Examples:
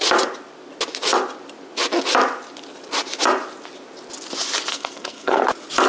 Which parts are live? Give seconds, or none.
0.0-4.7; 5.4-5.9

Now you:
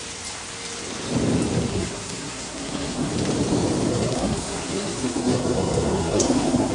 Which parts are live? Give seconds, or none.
0.0-1.7; 3.1-3.9

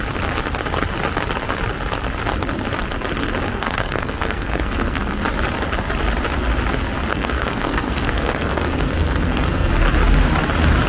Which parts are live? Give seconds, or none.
0.0-3.5; 5.2-7.1; 9.7-10.9

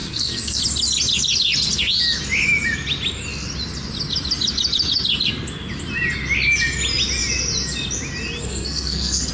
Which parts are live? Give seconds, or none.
0.6-8.4

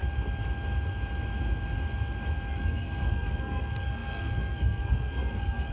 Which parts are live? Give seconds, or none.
0.0-2.5

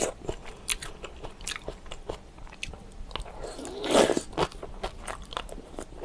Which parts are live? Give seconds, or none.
0.0-6.0

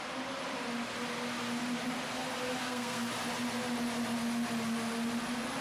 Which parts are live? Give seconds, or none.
0.0-2.6; 3.1-5.6

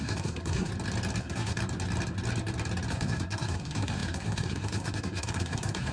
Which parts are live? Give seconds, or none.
0.7-1.2; 1.6-2.9